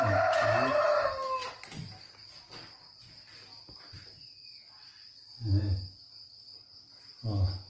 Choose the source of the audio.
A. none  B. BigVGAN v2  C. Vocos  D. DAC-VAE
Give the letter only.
A